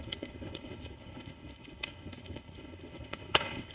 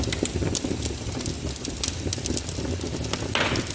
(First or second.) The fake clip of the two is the first